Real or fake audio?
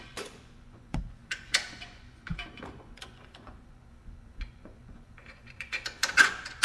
fake